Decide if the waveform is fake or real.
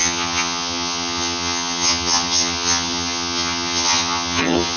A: fake